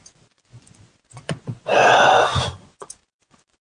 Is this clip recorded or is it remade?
remade